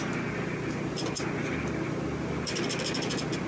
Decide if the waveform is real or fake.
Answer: real